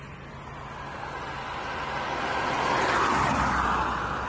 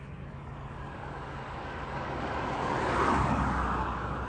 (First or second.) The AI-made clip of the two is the second